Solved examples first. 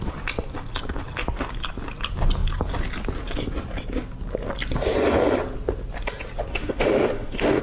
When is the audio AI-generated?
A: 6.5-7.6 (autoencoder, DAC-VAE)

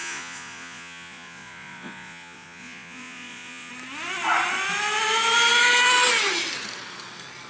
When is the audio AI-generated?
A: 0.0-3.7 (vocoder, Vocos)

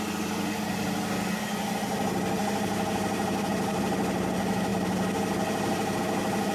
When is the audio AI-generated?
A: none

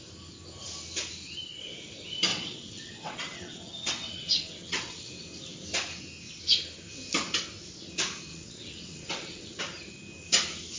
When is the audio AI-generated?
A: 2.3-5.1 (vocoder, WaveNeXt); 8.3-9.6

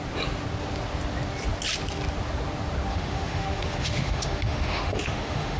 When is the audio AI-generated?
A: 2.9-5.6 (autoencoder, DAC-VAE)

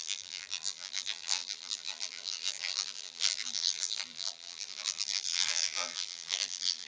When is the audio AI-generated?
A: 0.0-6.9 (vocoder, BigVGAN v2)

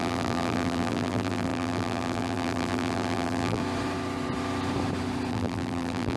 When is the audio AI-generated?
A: 0.0-3.6 (vocoder, BigVGAN v2); 5.3-6.2

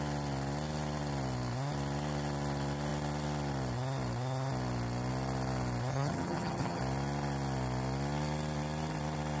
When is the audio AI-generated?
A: 5.9-6.8 (vocoder, HiFi-GAN)